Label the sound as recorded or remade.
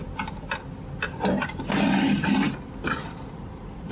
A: recorded